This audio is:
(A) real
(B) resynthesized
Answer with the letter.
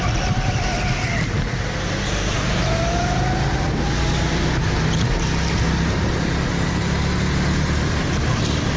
A